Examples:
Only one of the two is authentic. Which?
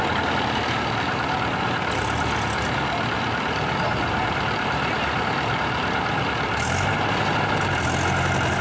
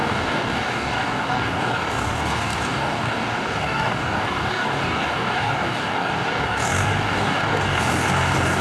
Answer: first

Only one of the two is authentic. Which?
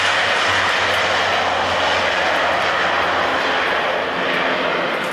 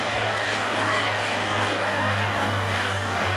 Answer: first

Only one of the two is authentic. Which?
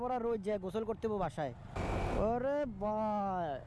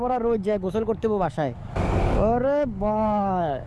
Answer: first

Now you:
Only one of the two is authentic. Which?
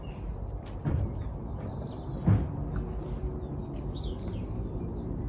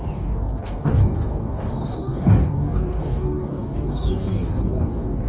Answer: first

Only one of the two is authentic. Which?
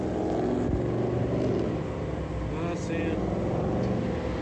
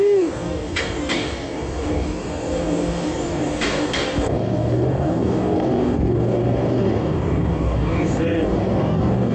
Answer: first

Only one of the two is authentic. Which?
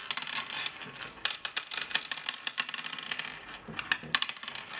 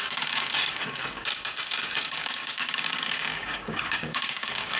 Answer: first